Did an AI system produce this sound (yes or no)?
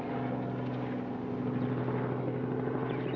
no